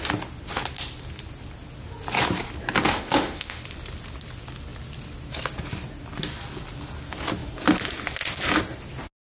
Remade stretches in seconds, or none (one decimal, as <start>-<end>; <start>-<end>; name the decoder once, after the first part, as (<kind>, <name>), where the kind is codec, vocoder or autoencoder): 2.9-3.6 (autoencoder, DAC-VAE)